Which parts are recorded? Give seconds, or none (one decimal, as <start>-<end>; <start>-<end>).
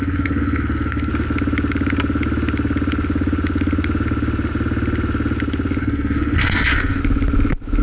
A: 1.1-5.8; 7.0-7.8